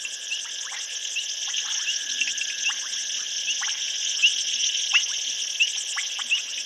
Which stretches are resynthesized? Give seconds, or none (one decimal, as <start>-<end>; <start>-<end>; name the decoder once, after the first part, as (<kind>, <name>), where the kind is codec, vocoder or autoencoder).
none